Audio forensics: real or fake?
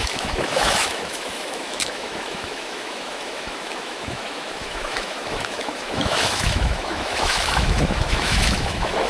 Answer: fake